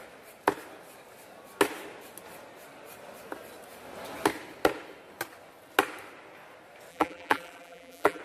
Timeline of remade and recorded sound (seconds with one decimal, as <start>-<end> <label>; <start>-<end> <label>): 0.0-6.9 recorded; 6.9-8.2 remade